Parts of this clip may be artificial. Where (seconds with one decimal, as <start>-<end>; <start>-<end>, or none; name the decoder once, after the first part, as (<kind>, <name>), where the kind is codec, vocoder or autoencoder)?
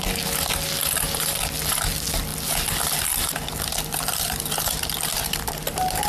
none